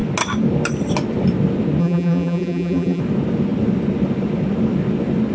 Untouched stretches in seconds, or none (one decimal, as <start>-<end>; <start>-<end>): 0.0-1.8; 3.0-5.3